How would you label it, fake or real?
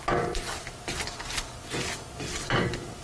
real